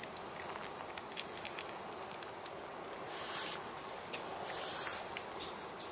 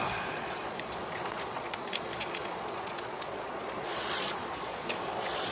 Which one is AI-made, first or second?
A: second